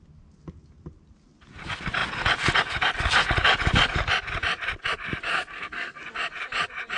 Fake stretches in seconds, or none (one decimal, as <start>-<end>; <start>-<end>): 5.3-6.0